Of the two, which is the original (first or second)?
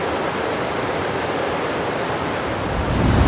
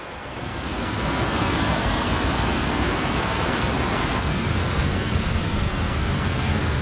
first